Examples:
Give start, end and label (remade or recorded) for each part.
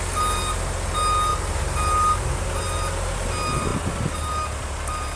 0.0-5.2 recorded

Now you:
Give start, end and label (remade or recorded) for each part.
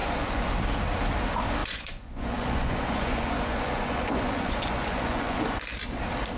0.0-0.5 remade; 0.5-1.6 recorded; 1.6-5.4 remade; 5.4-6.4 recorded